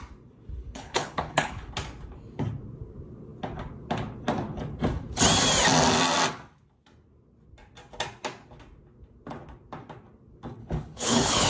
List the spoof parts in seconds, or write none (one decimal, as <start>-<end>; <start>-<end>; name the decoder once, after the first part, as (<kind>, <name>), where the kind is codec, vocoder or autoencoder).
0.6-1.7 (codec, HILCodec); 10.6-11.5